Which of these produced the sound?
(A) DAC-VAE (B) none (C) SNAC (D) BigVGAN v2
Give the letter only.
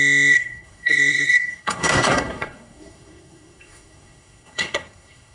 C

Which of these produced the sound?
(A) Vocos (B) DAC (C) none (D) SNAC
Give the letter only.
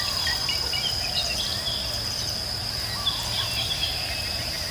C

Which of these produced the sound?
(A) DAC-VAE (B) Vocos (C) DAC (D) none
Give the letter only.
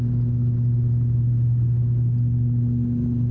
D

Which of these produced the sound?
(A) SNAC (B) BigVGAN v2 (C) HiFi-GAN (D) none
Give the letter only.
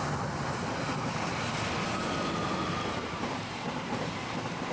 D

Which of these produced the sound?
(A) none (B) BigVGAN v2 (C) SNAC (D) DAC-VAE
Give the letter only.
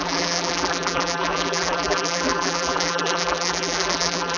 B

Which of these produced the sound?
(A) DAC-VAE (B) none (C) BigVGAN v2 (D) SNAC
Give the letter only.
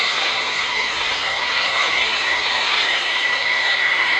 D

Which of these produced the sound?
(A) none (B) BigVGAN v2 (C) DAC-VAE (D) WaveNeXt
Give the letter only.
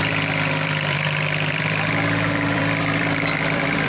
B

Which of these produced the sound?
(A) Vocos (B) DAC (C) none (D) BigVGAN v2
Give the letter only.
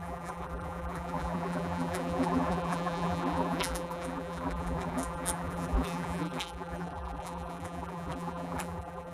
D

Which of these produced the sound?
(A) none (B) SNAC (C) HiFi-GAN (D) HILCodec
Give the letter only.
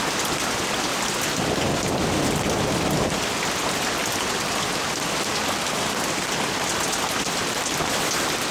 A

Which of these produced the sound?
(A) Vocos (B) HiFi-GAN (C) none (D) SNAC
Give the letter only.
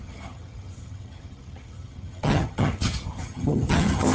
B